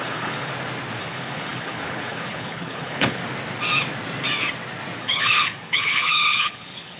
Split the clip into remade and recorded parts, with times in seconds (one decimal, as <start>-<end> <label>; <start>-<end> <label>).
0.0-0.5 remade; 0.5-1.0 recorded; 1.0-3.2 remade; 3.2-5.0 recorded; 5.0-7.0 remade